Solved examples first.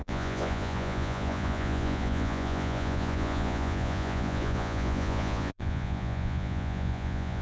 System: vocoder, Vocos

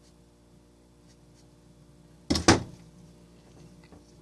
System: none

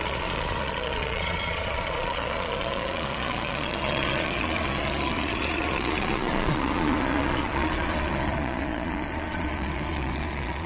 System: vocoder, Vocos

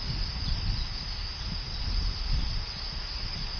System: none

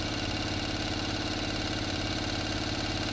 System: none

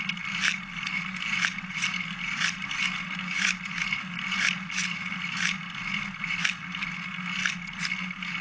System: none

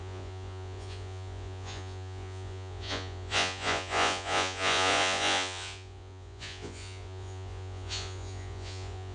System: vocoder, Vocos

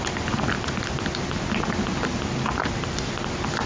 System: none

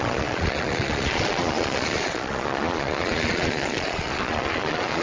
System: vocoder, Vocos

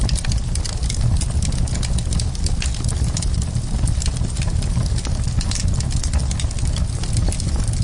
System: none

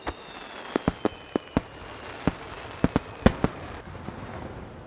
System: none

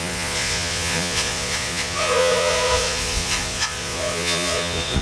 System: vocoder, Vocos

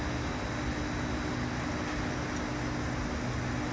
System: none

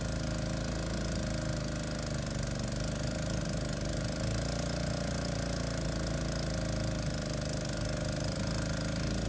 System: none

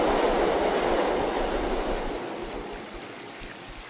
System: none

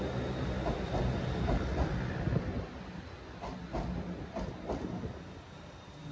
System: none